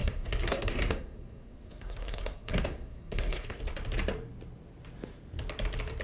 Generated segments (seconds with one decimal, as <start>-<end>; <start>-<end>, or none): 0.0-3.6